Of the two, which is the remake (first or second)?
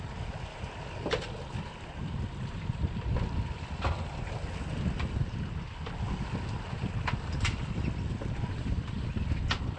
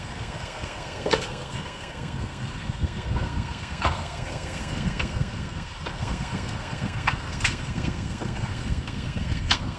second